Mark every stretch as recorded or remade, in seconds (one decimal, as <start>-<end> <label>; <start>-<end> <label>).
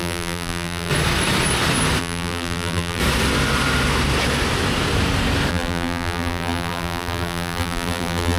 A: 0.0-0.9 remade; 0.9-2.0 recorded; 2.0-3.0 remade; 3.0-5.5 recorded; 5.5-8.4 remade